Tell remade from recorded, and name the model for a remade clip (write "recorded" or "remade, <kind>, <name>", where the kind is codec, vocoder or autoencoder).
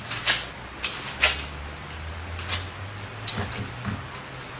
recorded